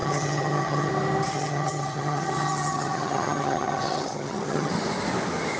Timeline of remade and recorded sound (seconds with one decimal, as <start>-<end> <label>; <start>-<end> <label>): 0.0-0.9 remade; 0.9-1.3 recorded; 1.3-4.7 remade; 4.7-5.6 recorded